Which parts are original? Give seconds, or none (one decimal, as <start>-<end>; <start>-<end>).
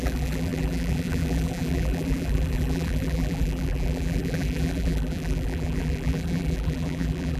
none